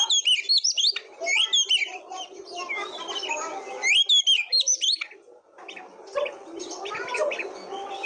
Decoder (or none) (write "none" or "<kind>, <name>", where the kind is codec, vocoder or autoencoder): none